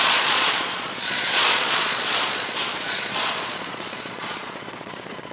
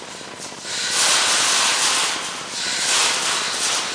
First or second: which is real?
second